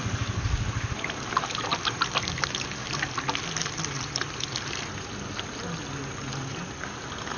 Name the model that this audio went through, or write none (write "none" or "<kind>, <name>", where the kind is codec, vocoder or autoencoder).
none